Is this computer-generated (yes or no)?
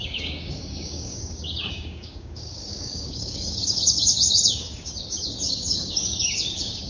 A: yes